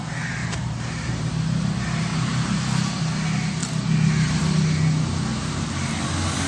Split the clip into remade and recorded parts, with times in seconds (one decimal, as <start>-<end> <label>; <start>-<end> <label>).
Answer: 0.0-0.4 recorded; 0.4-1.3 remade; 1.3-6.5 recorded